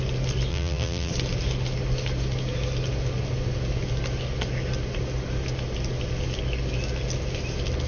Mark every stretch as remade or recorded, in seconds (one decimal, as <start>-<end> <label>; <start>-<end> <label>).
0.0-0.5 recorded; 0.5-1.1 remade; 1.1-7.9 recorded